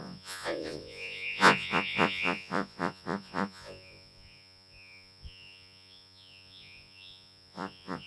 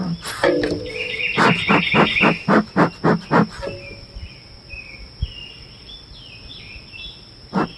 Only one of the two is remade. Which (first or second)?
first